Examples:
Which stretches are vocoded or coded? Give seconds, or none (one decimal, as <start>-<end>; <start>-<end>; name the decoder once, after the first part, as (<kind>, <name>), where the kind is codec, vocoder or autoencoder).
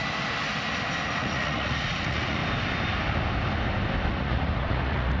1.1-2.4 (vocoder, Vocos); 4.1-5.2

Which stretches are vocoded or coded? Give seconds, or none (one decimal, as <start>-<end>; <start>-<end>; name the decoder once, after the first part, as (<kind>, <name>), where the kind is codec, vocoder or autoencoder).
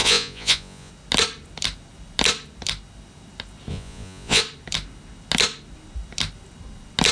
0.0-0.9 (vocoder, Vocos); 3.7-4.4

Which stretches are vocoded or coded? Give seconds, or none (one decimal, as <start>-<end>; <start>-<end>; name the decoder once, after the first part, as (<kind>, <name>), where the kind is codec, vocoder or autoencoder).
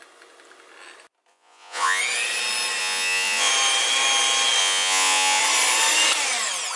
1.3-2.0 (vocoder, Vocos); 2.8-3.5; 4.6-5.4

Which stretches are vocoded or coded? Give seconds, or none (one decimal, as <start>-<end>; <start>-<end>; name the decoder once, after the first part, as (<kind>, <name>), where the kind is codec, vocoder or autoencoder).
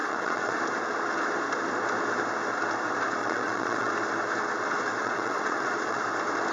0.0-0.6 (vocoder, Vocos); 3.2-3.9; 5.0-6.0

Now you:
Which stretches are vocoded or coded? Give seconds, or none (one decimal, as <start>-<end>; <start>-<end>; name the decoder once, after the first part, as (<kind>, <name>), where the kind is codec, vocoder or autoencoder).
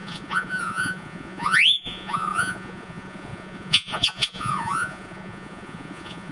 0.0-6.3 (vocoder, Vocos)